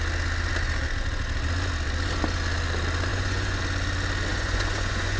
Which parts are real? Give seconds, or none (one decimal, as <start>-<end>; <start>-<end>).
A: 0.0-3.1; 3.6-4.3